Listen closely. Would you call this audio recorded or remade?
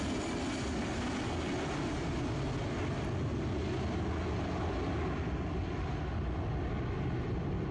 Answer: recorded